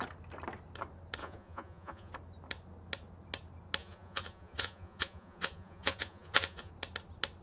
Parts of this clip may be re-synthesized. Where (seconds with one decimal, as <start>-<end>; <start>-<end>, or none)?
1.2-2.1; 3.8-6.7